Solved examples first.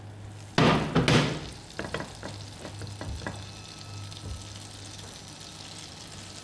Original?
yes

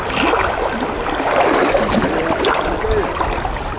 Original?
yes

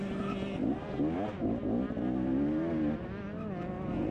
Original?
yes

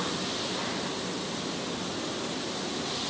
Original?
yes